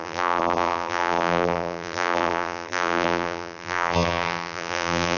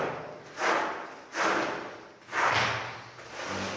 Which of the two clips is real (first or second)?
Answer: second